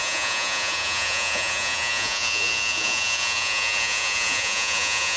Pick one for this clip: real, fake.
fake